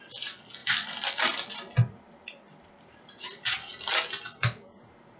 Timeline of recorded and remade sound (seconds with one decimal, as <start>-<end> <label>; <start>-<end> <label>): 0.0-0.6 recorded; 0.6-3.7 remade; 3.7-5.2 recorded